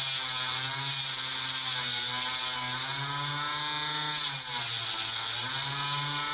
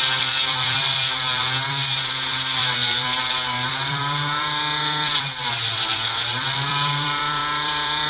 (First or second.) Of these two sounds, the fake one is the second